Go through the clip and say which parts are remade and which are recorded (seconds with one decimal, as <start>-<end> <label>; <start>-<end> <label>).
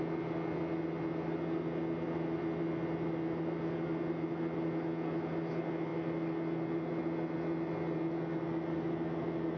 0.0-9.6 recorded